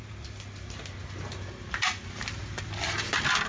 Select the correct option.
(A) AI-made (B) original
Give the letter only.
B